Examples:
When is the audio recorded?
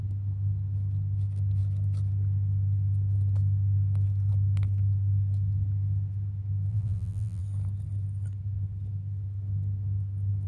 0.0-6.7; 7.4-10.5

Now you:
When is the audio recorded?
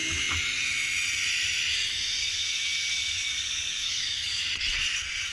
0.0-2.2; 4.4-5.3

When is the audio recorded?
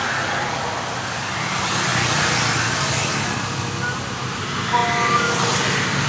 0.0-6.1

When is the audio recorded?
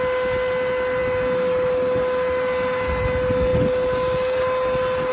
0.0-5.1